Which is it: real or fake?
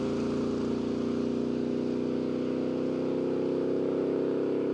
real